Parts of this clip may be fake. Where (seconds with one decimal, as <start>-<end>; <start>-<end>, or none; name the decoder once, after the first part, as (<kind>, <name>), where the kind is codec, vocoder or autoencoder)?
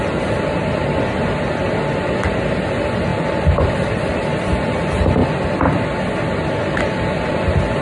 3.1-4.0 (vocoder, BigVGAN v2); 5.2-6.6